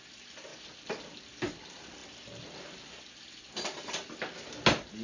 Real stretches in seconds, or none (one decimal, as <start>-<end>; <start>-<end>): 0.0-5.0